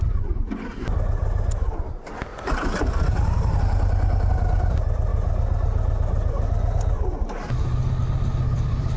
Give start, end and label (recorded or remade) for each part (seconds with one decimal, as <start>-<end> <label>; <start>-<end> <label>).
0.0-5.1 remade; 5.1-8.0 recorded; 8.0-9.0 remade